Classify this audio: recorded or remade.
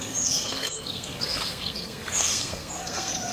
remade